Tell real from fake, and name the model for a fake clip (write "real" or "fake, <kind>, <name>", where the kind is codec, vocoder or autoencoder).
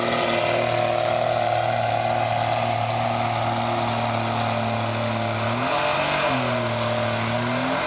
real